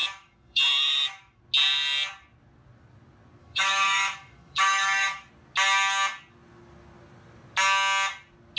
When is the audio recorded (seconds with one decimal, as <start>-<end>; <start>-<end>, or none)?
1.4-3.4; 5.3-8.6